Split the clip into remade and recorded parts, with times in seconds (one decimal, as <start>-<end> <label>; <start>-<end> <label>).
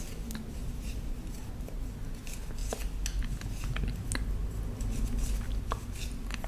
0.0-0.6 recorded; 0.6-1.8 remade; 1.8-6.5 recorded